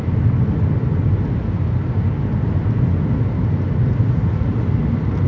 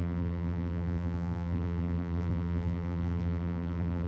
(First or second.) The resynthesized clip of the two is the second